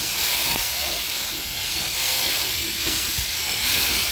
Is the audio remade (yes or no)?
yes